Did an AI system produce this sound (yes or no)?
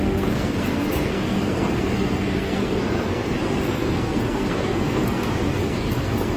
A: yes